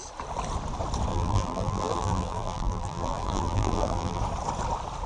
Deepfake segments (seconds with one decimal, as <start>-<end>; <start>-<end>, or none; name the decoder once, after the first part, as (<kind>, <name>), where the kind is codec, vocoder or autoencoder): 1.1-4.2 (vocoder, BigVGAN v2)